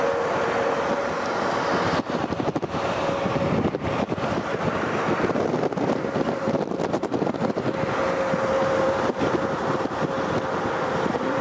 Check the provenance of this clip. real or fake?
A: fake